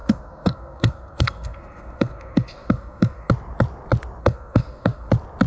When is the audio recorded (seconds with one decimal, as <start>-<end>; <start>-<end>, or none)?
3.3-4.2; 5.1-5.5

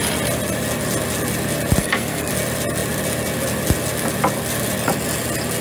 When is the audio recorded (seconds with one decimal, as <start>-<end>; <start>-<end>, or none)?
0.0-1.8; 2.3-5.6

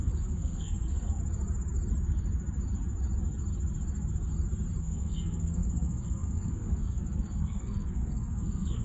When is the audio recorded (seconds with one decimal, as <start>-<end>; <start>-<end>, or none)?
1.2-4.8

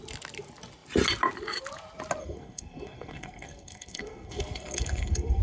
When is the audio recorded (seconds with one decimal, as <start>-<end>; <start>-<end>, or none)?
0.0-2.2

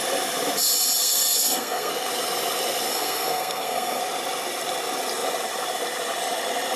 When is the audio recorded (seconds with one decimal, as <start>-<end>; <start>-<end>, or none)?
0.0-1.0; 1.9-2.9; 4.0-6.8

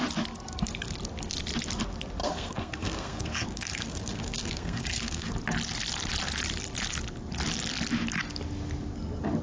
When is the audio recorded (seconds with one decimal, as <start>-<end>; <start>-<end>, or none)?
0.0-2.2; 5.3-9.4

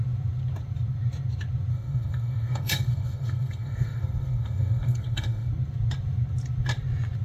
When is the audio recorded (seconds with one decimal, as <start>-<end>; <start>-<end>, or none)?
0.0-1.7; 5.5-7.2

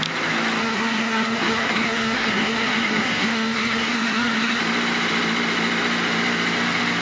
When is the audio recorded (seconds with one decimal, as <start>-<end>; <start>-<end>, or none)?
0.0-0.6; 4.6-7.0